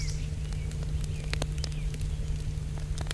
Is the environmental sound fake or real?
real